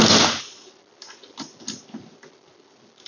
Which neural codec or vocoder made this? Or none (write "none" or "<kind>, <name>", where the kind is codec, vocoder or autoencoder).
none